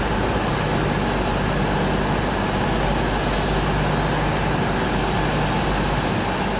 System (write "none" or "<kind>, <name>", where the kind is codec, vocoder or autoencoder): none